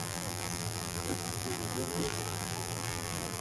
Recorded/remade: remade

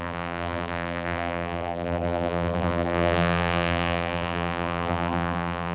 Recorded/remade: remade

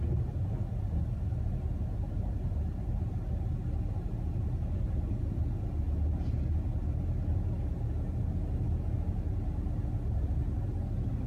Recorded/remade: recorded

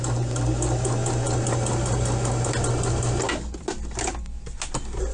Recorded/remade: recorded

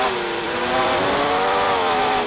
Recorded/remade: remade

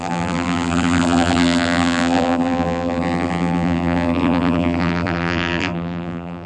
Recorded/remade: remade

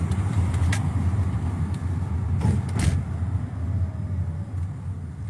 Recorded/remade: recorded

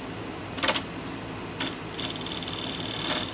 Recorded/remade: recorded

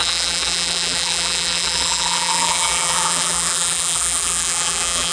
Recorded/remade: remade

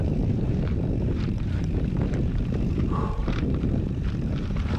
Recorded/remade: remade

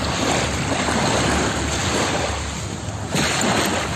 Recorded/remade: recorded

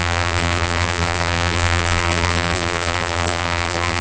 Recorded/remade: remade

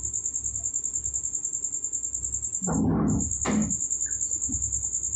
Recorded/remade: recorded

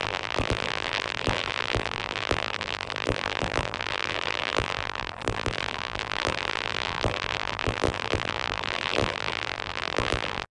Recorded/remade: remade